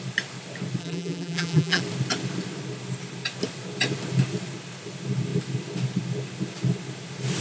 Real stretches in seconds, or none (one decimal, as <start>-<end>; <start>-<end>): 0.0-0.8; 1.8-7.4